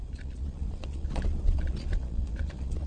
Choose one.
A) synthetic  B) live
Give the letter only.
A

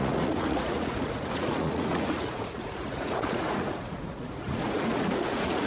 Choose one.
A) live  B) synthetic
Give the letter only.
B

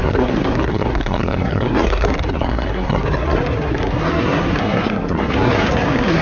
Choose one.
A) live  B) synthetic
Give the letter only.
B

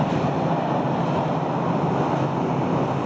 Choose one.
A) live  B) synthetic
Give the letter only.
A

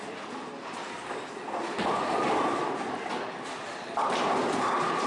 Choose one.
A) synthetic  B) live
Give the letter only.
B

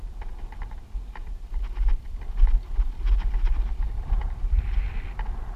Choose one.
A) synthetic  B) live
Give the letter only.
B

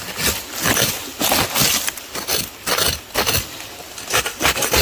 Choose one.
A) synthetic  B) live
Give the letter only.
B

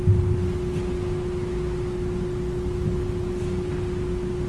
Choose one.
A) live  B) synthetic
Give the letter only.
A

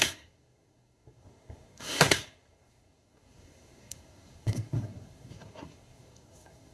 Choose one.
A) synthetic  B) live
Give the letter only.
A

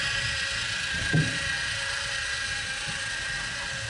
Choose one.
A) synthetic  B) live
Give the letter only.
B